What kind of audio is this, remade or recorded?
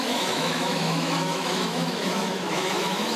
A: remade